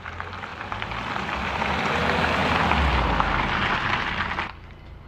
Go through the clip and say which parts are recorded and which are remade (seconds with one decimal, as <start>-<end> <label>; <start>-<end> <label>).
0.0-0.5 recorded; 0.5-1.6 remade; 1.6-5.1 recorded